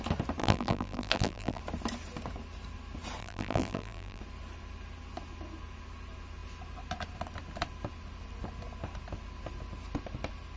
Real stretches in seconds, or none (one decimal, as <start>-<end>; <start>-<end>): 0.0-0.4; 1.6-3.2; 4.2-10.6